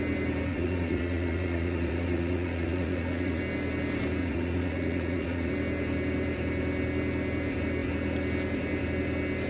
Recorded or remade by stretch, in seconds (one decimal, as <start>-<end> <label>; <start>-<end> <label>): 0.0-0.5 recorded; 0.5-3.4 remade; 3.4-4.2 recorded; 4.2-5.5 remade; 5.5-9.5 recorded